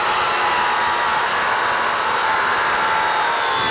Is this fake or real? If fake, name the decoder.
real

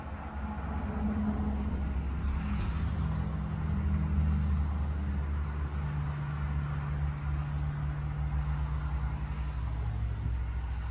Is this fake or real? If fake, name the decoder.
real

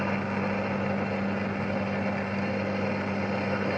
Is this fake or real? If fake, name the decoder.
real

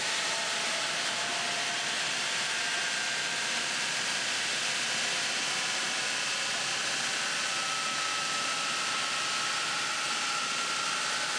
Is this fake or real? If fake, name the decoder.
real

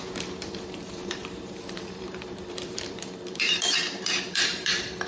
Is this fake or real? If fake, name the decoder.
fake, vocoder, BigVGAN v2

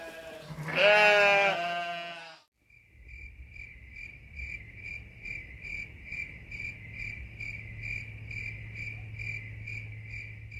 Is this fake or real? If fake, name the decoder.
real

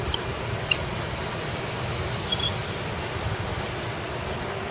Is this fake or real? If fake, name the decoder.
real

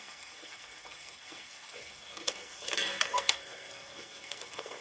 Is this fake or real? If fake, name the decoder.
fake, codec, SNAC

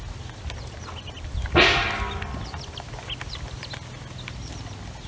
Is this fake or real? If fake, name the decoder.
real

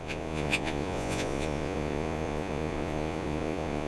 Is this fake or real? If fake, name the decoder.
fake, vocoder, Vocos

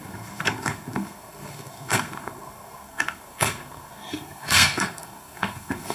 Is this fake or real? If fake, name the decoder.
fake, codec, SNAC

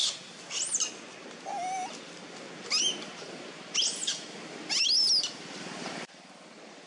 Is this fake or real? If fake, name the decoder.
real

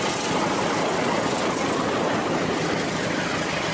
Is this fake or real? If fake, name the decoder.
real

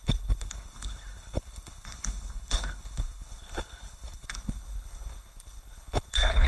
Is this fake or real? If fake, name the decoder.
fake, codec, HILCodec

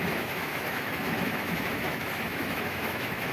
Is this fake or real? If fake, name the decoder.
fake, autoencoder, DAC-VAE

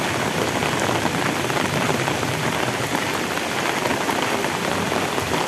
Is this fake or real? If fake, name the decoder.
real